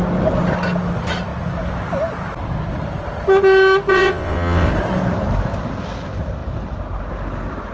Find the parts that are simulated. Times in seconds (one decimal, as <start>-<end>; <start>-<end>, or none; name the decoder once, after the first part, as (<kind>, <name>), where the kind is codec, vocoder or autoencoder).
3.9-4.7 (vocoder, WaveNeXt)